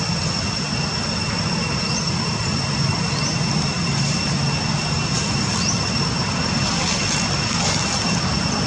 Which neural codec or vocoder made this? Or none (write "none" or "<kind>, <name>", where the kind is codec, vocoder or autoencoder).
none